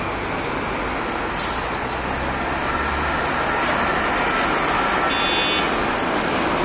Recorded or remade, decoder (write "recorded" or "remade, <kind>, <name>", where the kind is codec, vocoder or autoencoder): recorded